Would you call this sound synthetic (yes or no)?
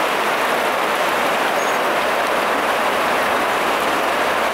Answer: no